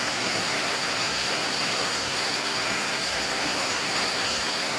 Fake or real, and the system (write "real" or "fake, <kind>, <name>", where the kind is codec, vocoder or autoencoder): fake, codec, SNAC